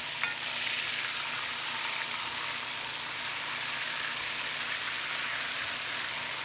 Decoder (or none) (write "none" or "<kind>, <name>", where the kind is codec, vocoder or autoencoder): none